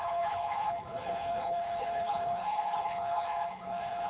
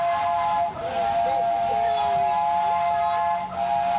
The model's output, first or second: first